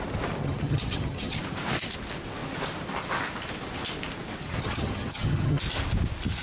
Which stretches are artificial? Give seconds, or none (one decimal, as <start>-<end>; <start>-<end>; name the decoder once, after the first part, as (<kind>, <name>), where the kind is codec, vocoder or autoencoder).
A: 0.4-1.4 (vocoder, HiFi-GAN); 4.4-5.6